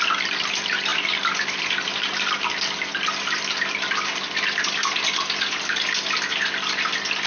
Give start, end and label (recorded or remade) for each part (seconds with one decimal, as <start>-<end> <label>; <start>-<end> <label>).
0.0-7.3 recorded